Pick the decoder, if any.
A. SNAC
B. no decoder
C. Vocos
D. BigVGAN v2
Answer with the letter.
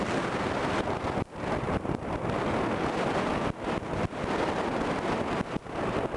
B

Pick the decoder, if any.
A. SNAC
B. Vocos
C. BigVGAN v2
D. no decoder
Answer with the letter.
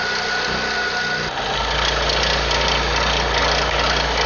D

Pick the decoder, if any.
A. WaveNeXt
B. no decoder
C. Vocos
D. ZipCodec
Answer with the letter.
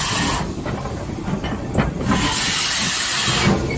B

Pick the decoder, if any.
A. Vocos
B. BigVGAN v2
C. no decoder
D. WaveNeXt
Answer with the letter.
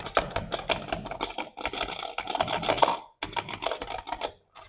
C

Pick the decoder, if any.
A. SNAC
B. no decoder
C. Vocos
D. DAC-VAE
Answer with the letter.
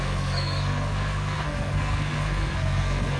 A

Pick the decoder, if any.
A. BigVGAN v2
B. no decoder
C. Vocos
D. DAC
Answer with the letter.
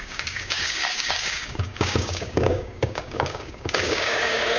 D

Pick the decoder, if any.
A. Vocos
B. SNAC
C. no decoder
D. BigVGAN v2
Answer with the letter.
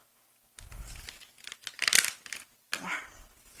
C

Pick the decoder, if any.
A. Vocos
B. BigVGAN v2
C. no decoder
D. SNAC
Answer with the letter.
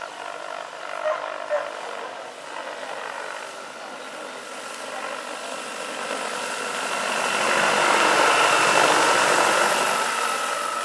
C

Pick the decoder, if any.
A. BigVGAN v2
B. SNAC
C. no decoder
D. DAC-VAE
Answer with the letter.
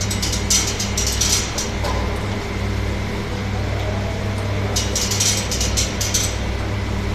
C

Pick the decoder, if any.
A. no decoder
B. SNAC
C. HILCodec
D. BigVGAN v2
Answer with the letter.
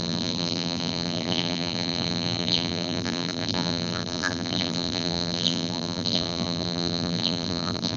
D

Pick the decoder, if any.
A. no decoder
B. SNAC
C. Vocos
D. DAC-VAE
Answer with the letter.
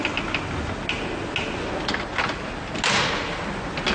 A